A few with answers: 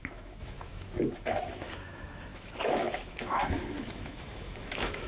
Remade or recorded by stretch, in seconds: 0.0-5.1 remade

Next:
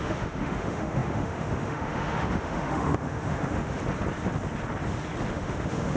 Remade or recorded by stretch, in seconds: 0.0-3.8 remade; 3.8-5.3 recorded; 5.3-6.0 remade

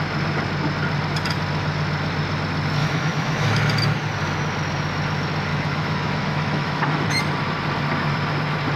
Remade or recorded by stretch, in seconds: 0.0-2.8 recorded; 2.8-3.6 remade; 3.6-5.5 recorded; 5.5-7.2 remade; 7.2-8.8 recorded

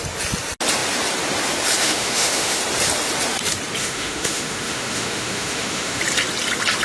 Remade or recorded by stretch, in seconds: 0.0-1.8 recorded; 1.8-2.6 remade; 2.6-3.8 recorded; 3.8-6.0 remade; 6.0-6.8 recorded